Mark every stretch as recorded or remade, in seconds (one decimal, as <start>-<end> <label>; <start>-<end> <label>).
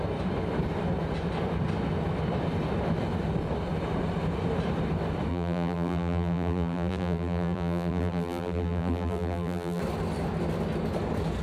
0.0-5.3 recorded; 5.3-9.8 remade; 9.8-11.4 recorded